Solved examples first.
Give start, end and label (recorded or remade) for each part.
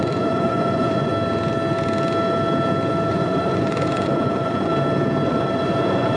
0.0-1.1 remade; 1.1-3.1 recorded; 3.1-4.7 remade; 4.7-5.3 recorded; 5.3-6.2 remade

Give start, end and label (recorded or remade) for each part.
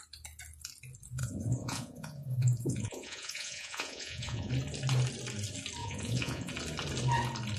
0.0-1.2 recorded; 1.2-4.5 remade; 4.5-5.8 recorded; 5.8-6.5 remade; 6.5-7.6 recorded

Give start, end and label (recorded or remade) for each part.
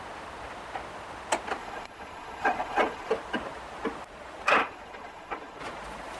0.0-1.6 recorded; 1.6-3.1 remade; 3.1-4.6 recorded; 4.6-5.6 remade; 5.6-6.2 recorded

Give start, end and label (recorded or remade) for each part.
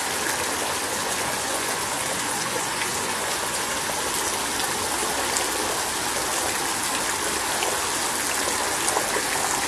0.0-0.8 recorded; 0.8-3.7 remade; 3.7-9.7 recorded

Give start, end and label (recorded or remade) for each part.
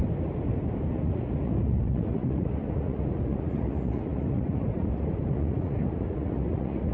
0.0-0.9 recorded; 0.9-6.9 remade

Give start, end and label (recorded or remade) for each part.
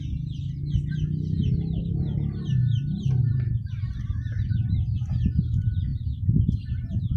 0.0-7.2 recorded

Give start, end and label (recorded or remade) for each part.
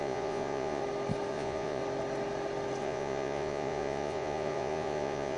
0.0-0.8 remade; 0.8-1.3 recorded; 1.3-1.8 remade; 1.8-2.8 recorded; 2.8-5.4 remade